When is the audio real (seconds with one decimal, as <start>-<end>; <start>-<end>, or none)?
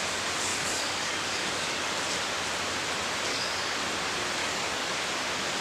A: 0.0-0.5; 1.9-3.3; 3.8-4.4; 5.0-5.6